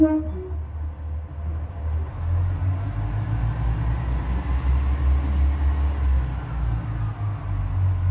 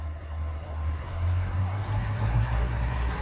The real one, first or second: first